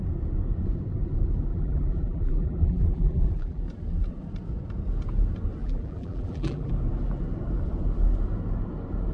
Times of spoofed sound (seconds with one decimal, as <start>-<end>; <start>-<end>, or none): 1.5-3.6; 5.6-6.7